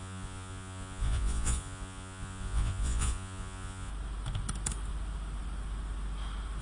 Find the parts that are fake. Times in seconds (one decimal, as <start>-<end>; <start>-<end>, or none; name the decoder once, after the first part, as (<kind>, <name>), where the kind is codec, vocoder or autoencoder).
0.0-3.9 (vocoder, Vocos)